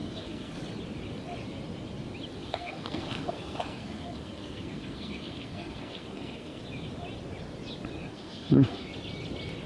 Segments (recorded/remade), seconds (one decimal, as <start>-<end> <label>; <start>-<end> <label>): 0.0-0.6 remade; 0.6-2.4 recorded; 2.4-6.6 remade; 6.6-8.1 recorded; 8.1-8.9 remade; 8.9-9.7 recorded